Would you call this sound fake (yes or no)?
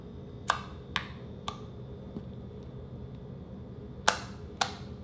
no